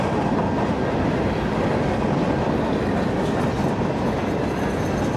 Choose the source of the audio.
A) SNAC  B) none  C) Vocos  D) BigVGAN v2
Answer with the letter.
B